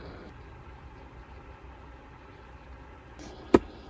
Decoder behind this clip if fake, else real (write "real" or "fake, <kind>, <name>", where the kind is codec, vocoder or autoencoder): real